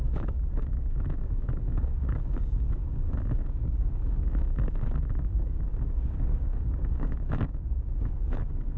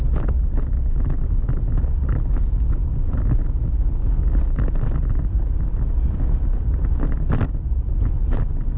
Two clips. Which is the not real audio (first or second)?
first